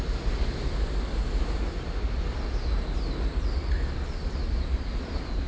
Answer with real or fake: real